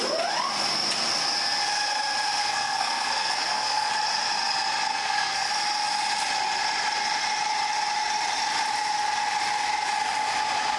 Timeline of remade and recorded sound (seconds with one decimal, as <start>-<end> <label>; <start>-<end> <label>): 0.0-2.4 recorded; 2.4-3.9 remade; 3.9-4.9 recorded; 4.9-5.5 remade; 5.5-10.8 recorded